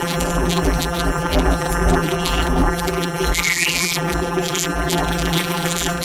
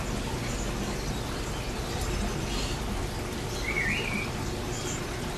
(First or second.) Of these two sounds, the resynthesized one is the first